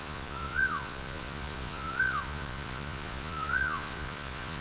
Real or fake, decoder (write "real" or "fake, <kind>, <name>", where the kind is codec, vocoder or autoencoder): fake, vocoder, Vocos